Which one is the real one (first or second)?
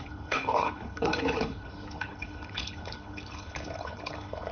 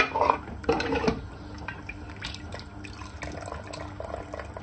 second